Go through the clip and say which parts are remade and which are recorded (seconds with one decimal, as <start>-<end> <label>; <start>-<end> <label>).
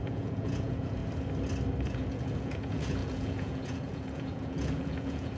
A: 0.0-1.0 remade; 1.0-1.9 recorded; 1.9-5.4 remade